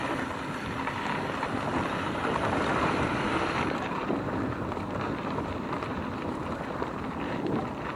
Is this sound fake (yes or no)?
yes